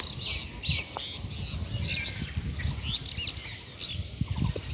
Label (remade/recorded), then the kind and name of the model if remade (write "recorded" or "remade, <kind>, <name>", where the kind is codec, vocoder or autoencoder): recorded